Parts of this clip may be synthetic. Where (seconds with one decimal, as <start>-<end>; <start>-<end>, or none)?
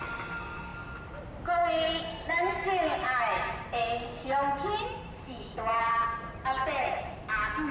none